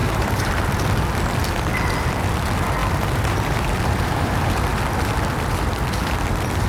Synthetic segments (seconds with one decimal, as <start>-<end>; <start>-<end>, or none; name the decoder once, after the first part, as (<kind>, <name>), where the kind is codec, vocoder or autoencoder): 0.0-0.7 (vocoder, BigVGAN v2); 2.8-4.8